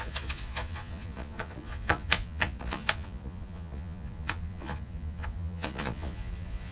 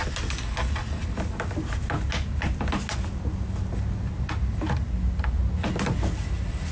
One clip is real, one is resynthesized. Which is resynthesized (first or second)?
first